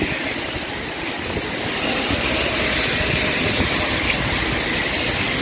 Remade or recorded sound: recorded